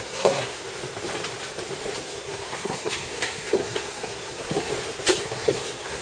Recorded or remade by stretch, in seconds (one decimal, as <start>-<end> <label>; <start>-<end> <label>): 0.0-0.6 remade; 0.6-2.0 recorded; 2.0-4.7 remade; 4.7-5.2 recorded; 5.2-6.0 remade